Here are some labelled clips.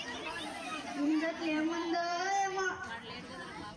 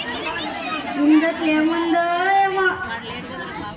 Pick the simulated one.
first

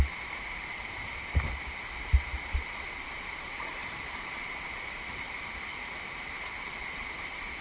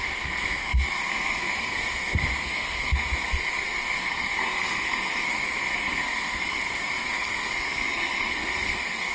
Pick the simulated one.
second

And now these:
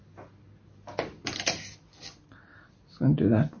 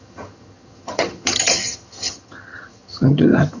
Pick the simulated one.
second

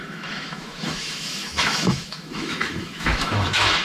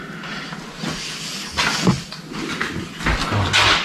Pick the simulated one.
first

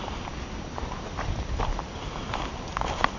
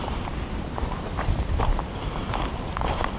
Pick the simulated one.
second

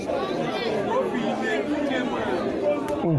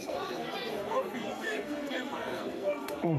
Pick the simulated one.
second